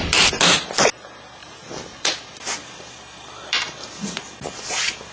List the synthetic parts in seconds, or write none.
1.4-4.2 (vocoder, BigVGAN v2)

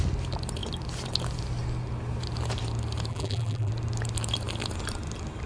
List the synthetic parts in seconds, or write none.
3.1-3.7 (vocoder, BigVGAN v2)

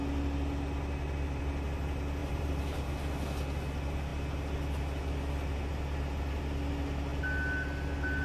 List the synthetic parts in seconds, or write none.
2.2-2.9 (vocoder, BigVGAN v2)

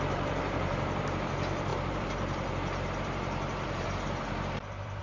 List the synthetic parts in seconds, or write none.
0.0-5.0 (vocoder, BigVGAN v2)